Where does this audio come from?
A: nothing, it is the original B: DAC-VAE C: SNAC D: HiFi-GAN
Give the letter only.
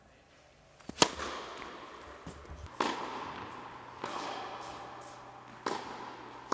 A